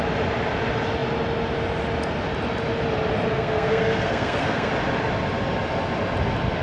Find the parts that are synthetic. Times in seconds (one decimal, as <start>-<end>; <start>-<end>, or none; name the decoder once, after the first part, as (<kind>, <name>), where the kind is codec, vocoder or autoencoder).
3.3-4.7 (codec, SNAC)

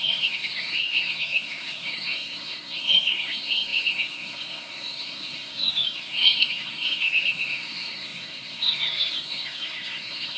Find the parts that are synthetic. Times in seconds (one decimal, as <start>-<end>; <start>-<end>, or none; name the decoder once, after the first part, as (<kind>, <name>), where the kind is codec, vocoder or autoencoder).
0.0-10.4 (codec, SNAC)